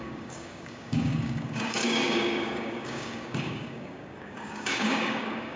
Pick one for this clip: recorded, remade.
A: remade